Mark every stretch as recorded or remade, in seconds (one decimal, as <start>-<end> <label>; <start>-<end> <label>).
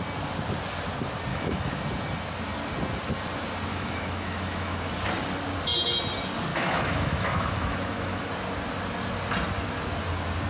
0.0-1.3 recorded; 1.3-1.8 remade; 1.8-3.7 recorded; 3.7-4.9 remade; 4.9-6.5 recorded; 6.5-8.3 remade; 8.3-10.5 recorded